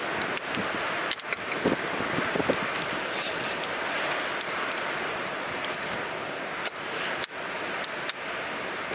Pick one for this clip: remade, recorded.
recorded